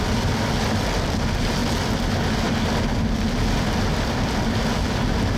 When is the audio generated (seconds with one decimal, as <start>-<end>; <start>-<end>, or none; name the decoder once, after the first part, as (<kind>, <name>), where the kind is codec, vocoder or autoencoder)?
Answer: none